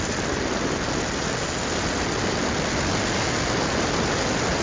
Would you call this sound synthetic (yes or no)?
no